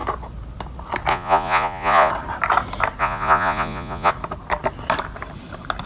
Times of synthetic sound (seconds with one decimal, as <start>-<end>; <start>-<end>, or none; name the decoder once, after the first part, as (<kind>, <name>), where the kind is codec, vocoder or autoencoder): 1.1-2.1 (vocoder, Vocos); 3.0-4.1